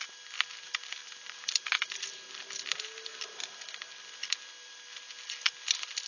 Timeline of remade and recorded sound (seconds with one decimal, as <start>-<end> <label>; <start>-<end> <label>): 0.0-6.1 recorded